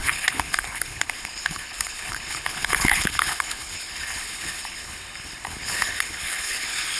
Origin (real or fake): fake